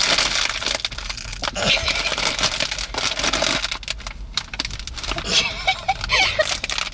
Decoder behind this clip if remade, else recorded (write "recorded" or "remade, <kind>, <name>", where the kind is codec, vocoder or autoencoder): recorded